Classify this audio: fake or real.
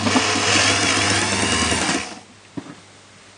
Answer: real